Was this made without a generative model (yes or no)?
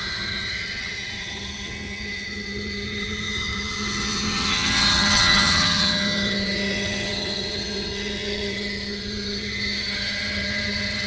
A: no